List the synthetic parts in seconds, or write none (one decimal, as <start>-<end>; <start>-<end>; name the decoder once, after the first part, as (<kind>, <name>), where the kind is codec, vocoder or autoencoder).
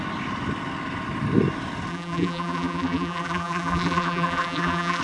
1.9-5.0 (vocoder, BigVGAN v2)